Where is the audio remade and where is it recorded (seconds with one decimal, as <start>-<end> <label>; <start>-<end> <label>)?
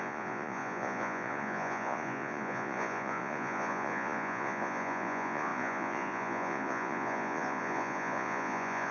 0.0-8.9 remade